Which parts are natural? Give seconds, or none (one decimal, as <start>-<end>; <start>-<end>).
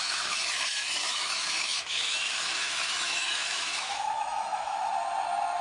4.9-5.6